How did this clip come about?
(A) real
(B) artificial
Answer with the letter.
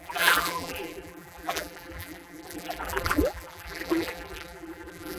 B